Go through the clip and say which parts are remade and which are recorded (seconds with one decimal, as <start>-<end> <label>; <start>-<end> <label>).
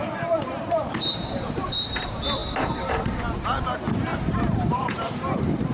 0.0-5.7 remade